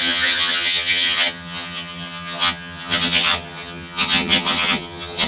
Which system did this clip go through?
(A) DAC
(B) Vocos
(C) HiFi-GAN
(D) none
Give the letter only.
C